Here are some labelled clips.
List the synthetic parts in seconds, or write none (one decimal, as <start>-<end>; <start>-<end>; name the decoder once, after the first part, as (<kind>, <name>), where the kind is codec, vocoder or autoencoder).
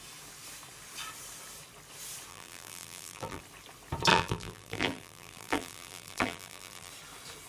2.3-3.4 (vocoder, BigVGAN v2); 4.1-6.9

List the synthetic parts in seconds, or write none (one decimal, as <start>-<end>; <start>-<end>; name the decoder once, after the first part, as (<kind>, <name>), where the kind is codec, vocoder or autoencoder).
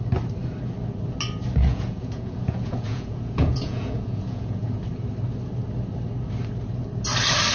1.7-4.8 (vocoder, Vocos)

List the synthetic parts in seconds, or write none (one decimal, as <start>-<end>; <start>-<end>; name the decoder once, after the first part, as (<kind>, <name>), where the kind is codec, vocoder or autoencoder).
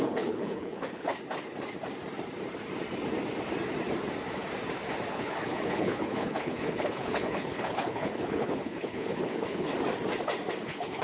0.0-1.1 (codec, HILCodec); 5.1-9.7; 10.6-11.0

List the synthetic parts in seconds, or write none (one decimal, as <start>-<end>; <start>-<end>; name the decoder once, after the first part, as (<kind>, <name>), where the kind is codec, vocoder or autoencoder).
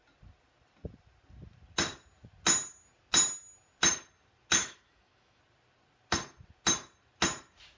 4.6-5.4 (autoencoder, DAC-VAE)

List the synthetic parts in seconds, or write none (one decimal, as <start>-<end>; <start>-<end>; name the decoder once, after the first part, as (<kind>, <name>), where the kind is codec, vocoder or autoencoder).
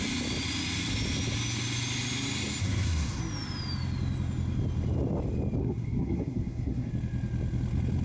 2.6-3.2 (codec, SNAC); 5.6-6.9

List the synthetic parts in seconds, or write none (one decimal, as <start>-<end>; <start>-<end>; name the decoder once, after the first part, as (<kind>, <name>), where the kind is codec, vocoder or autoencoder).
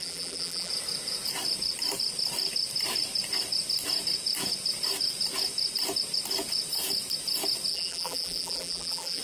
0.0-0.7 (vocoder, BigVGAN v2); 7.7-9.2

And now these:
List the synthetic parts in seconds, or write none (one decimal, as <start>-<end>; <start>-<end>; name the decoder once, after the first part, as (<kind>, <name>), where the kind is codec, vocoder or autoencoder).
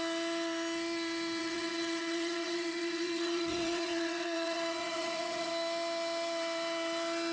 1.4-5.5 (vocoder, WaveNeXt)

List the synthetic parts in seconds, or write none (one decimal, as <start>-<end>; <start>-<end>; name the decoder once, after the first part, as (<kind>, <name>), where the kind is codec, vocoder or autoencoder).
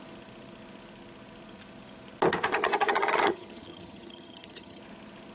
2.6-4.8 (vocoder, HiFi-GAN)